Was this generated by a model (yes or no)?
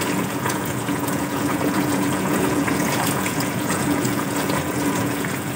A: yes